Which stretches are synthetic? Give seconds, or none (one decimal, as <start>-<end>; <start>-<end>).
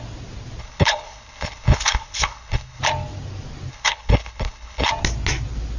0.6-2.8; 3.7-4.9